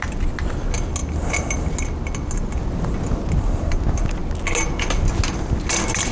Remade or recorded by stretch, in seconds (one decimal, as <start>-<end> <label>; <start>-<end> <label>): 0.0-6.1 recorded